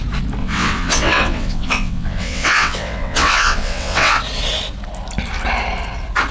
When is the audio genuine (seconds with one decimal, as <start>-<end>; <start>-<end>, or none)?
0.0-0.4; 4.2-6.3